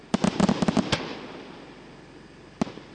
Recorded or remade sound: recorded